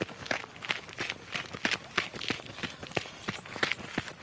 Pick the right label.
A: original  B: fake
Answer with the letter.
A